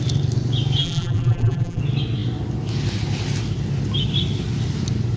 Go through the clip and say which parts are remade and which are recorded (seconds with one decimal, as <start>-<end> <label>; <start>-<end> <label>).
0.0-0.8 recorded; 0.8-1.8 remade; 1.8-5.2 recorded